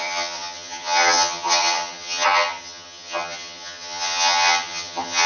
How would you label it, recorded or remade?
remade